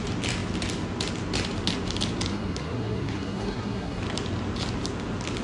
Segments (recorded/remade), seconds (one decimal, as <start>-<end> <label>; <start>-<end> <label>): 0.0-2.3 recorded; 2.3-4.0 remade; 4.0-5.4 recorded